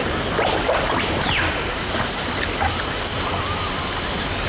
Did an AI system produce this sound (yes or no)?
no